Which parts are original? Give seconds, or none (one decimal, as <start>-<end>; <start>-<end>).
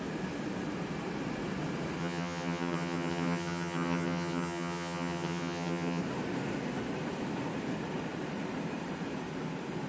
0.0-2.0; 6.0-9.9